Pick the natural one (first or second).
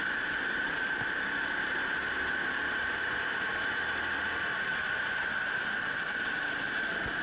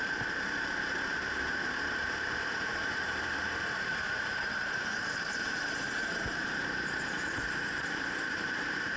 first